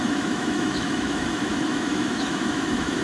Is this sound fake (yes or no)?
yes